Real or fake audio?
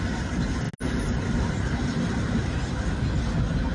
real